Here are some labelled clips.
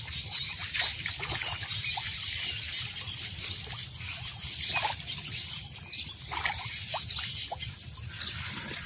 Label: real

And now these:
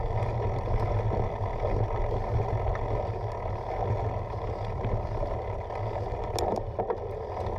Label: real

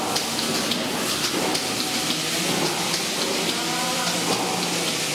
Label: real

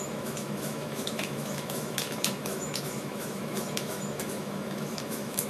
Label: fake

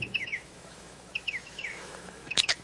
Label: fake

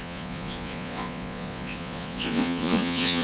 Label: fake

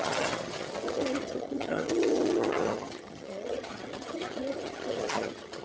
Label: fake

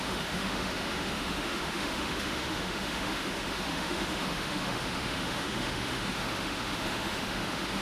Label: fake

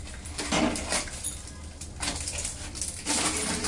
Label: real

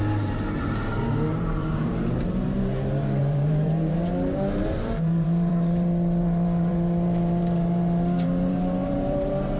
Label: fake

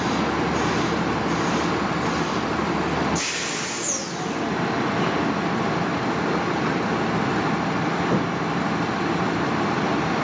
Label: real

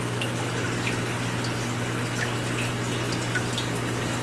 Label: real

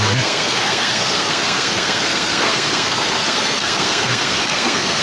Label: fake